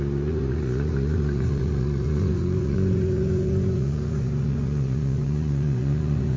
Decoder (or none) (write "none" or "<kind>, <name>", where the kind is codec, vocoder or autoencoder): vocoder, Vocos